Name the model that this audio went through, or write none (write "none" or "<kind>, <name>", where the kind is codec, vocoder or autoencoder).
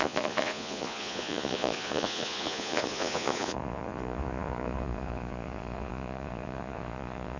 vocoder, Vocos